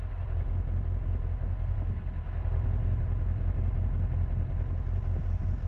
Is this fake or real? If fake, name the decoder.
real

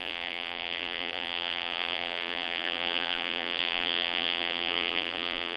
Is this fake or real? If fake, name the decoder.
fake, vocoder, BigVGAN v2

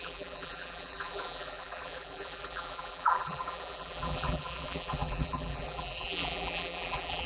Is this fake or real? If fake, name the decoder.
fake, vocoder, BigVGAN v2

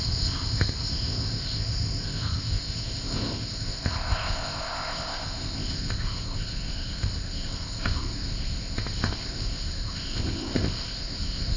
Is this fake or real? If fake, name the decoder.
fake, codec, ZipCodec